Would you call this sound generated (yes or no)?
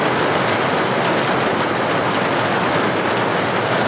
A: no